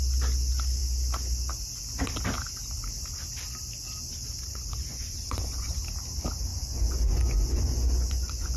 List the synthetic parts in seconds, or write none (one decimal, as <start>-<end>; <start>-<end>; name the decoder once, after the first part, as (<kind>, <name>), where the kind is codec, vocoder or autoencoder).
4.5-5.7 (vocoder, Vocos); 6.5-8.6